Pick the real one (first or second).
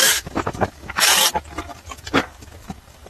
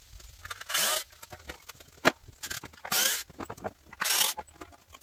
second